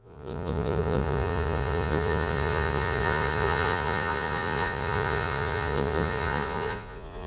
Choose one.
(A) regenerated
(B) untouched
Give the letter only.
A